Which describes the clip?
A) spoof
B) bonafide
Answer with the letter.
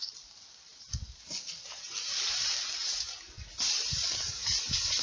B